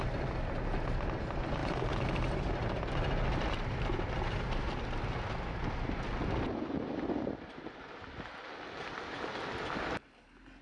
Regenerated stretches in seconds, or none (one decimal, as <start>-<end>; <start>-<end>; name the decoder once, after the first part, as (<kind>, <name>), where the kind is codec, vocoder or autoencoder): none